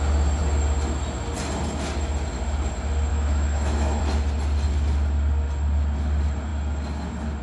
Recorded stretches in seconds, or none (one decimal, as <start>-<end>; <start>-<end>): 0.0-3.1; 4.0-7.4